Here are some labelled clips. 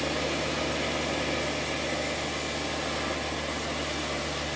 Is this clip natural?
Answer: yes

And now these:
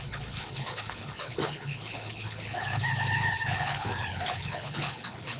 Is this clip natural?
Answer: no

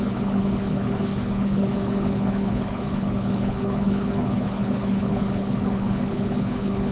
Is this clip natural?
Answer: no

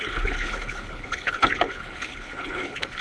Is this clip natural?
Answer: no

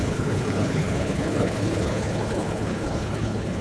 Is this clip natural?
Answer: no